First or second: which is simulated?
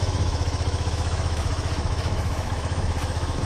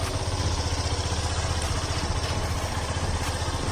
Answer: first